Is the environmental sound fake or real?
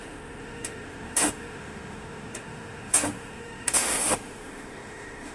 fake